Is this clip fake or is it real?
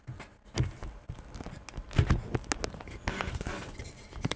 real